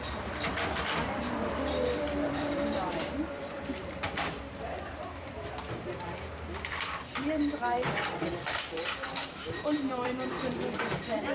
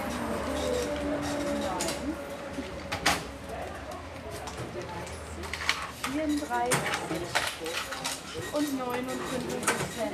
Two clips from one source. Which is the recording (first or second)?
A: second